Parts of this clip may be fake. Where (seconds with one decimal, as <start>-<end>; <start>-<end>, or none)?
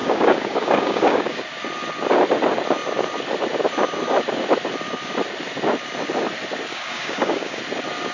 0.0-1.4; 6.7-7.6